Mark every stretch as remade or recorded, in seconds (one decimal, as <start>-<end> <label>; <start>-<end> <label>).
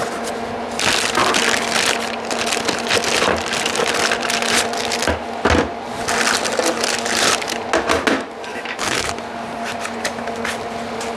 0.0-8.5 recorded; 8.5-9.1 remade; 9.1-11.2 recorded